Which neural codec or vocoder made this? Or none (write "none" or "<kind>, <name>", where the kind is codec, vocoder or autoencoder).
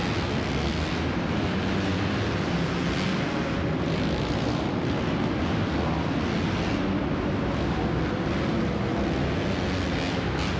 none